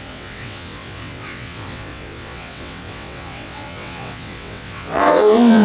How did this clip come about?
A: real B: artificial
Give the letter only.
B